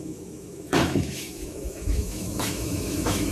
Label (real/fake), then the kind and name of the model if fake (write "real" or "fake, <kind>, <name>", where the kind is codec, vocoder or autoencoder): fake, autoencoder, DAC-VAE